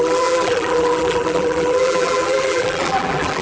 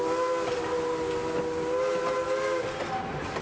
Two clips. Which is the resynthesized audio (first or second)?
first